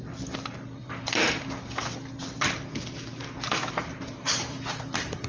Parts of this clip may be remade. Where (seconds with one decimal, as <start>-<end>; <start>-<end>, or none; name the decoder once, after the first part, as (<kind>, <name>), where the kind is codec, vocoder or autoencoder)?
0.8-1.4 (vocoder, BigVGAN v2); 3.1-5.3